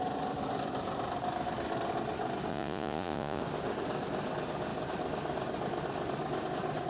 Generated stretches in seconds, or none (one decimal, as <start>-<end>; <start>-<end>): 2.5-3.4